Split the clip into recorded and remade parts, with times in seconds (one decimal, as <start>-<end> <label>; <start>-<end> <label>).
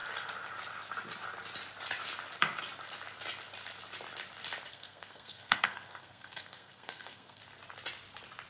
0.0-4.7 recorded; 4.7-7.4 remade; 7.4-8.5 recorded